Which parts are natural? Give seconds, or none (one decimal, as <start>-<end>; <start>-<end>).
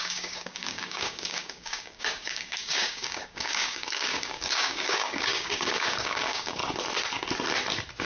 6.6-8.0